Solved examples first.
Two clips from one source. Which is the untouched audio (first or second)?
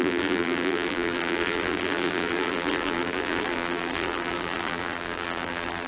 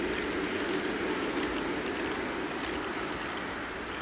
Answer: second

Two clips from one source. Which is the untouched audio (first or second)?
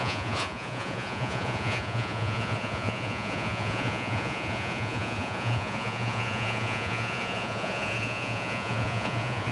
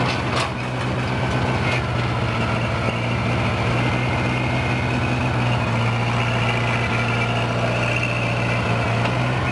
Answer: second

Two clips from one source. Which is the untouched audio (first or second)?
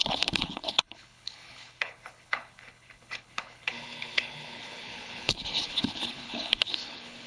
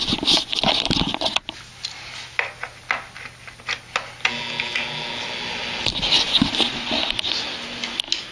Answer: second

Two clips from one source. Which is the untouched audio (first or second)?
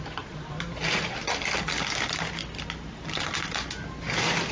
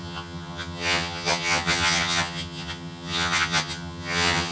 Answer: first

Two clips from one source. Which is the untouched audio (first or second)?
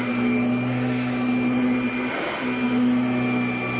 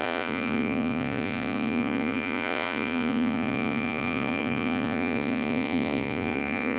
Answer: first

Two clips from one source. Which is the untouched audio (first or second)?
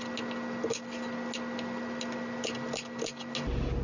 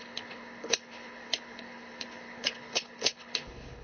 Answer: first